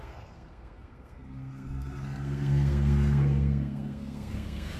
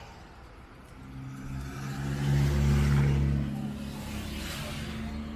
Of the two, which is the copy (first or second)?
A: first